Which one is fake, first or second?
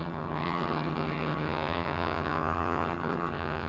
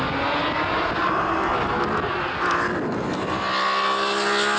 first